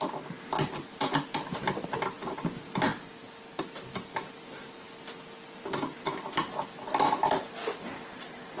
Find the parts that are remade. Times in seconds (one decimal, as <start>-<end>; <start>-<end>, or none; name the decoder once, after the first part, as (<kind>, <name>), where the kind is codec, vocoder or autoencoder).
none